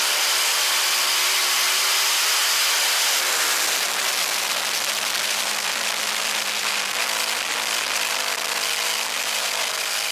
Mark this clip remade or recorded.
recorded